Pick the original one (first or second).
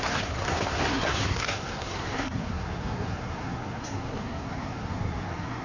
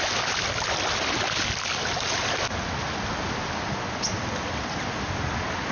second